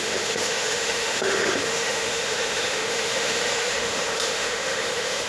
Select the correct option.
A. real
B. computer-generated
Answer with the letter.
B